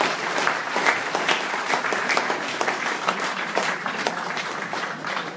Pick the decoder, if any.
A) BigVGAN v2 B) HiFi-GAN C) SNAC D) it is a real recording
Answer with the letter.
A